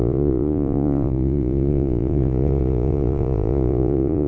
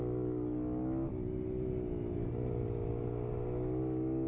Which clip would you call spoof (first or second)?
first